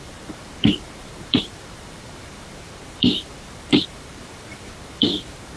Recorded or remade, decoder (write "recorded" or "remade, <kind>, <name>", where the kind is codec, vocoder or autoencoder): remade, vocoder, BigVGAN v2